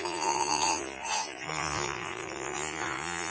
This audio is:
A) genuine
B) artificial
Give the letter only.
B